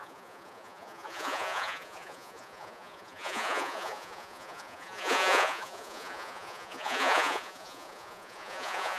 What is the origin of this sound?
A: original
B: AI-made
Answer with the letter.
B